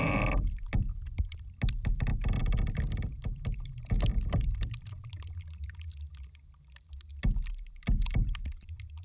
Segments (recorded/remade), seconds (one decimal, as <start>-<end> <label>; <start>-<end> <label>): 0.0-9.0 recorded